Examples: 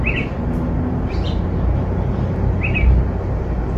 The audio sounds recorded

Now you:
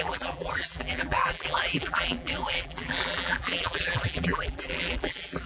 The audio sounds remade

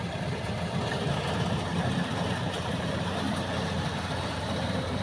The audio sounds remade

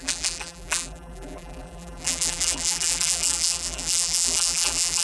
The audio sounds remade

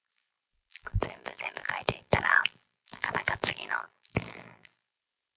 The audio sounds remade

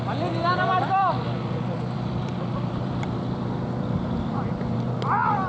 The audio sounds remade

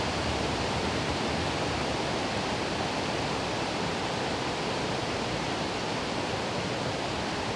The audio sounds remade